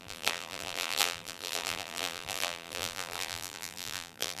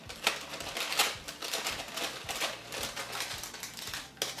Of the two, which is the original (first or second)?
second